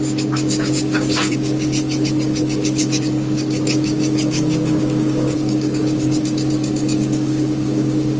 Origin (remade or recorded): remade